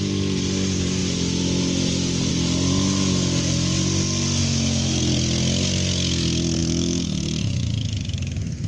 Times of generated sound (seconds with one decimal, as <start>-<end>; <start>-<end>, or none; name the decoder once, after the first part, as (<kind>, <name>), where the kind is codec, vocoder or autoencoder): 4.4-5.0 (autoencoder, DAC-VAE); 6.6-8.7